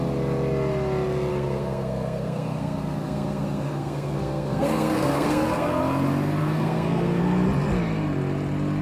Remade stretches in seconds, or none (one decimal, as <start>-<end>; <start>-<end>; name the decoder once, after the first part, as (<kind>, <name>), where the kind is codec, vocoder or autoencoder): 1.3-5.8 (codec, SNAC); 6.4-7.2